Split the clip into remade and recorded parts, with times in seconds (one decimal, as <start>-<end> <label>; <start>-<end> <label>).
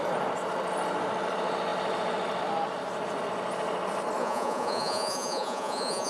0.0-4.2 recorded; 4.2-6.1 remade